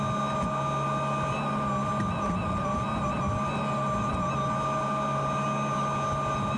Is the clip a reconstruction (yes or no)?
no